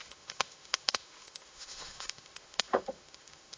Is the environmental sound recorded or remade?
remade